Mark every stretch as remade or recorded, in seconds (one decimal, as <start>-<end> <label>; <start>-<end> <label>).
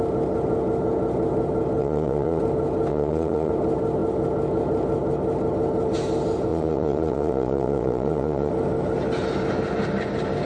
0.0-1.8 recorded; 1.8-2.4 remade; 2.4-2.9 recorded; 2.9-3.5 remade; 3.5-6.5 recorded; 6.5-8.5 remade; 8.5-10.5 recorded